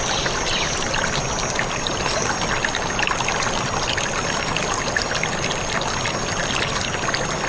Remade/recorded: recorded